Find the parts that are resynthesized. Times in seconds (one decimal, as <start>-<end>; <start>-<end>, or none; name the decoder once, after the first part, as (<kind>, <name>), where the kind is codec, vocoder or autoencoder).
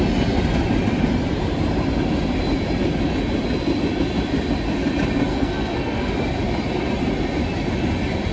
5.3-6.1 (codec, SNAC)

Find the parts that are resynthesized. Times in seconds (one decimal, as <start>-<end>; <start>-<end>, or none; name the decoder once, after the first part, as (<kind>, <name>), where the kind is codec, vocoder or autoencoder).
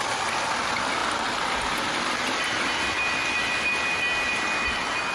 none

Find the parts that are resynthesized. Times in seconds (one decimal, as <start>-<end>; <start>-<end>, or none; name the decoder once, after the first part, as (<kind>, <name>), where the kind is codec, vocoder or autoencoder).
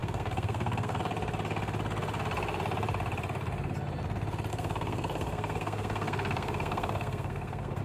0.0-1.0 (codec, SNAC); 4.5-7.8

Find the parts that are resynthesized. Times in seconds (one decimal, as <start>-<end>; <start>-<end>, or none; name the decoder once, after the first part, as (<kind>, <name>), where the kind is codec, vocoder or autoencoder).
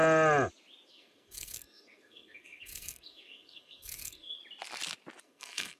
0.9-4.4 (codec, SNAC); 5.2-5.8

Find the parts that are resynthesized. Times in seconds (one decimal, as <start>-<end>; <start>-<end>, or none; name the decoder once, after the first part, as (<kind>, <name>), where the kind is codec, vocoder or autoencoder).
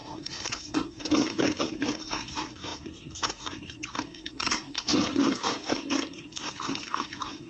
0.0-7.5 (codec, SNAC)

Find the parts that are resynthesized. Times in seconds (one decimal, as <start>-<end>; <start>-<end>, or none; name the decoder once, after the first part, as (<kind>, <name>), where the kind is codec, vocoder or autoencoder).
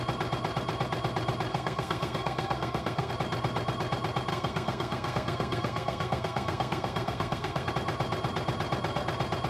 1.5-3.1 (codec, SNAC); 4.3-7.7